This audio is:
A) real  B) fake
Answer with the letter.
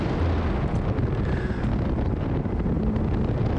A